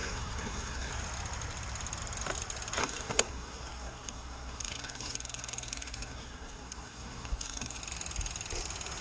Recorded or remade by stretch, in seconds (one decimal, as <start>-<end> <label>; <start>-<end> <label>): 0.0-0.9 remade; 0.9-2.8 recorded; 2.8-7.8 remade; 7.8-9.0 recorded